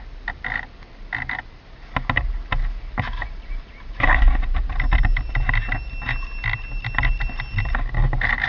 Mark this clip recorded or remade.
recorded